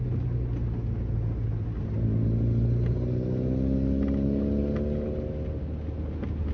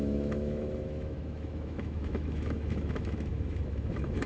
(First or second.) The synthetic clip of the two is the second